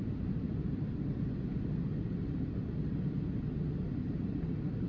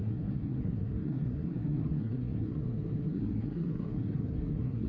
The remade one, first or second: second